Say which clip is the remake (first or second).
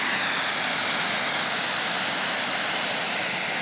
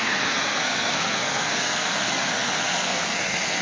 second